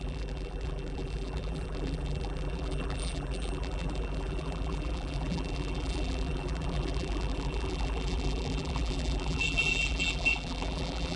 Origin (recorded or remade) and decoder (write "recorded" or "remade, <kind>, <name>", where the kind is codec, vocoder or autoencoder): remade, vocoder, BigVGAN v2